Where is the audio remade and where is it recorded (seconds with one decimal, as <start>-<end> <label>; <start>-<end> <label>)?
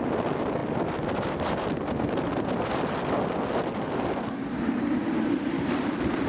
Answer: 0.0-6.3 recorded